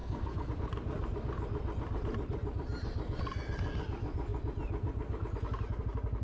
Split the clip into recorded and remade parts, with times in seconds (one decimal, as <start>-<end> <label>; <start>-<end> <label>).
0.0-0.5 remade; 0.5-6.2 recorded